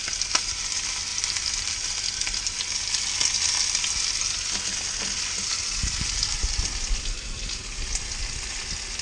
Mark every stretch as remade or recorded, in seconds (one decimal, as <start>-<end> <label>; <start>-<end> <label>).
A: 0.0-9.0 recorded